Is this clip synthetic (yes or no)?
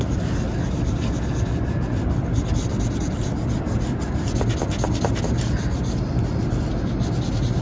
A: no